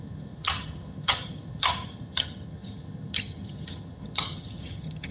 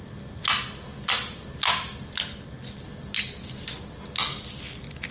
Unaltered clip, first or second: second